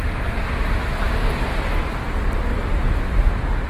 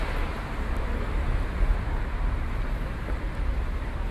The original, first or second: first